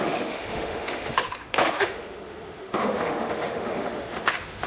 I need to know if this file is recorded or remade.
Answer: remade